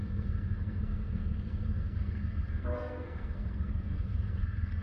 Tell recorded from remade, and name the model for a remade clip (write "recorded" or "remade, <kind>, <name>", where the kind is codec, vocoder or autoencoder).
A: remade, codec, SNAC